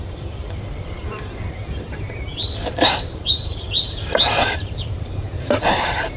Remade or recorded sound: remade